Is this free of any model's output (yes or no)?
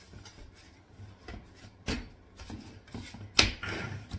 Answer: yes